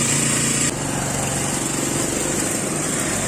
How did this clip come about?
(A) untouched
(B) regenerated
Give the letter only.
A